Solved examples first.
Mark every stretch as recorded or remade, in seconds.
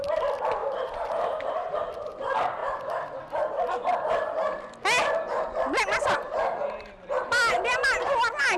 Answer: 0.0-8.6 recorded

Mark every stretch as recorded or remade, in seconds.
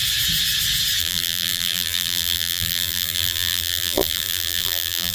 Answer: 0.0-1.0 recorded; 1.0-5.1 remade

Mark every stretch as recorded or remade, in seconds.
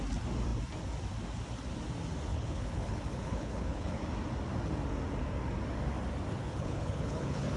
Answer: 0.0-2.3 recorded; 2.3-4.0 remade; 4.0-6.4 recorded; 6.4-7.6 remade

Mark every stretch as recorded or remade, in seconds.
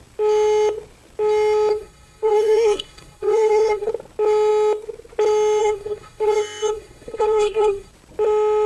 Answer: 0.0-1.7 recorded; 1.7-3.9 remade; 3.9-5.6 recorded; 5.6-7.9 remade; 7.9-8.7 recorded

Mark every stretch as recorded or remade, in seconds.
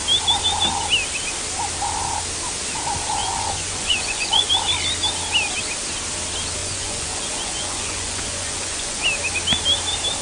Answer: 0.0-3.2 recorded; 3.2-4.5 remade; 4.5-6.6 recorded; 6.6-9.0 remade; 9.0-10.2 recorded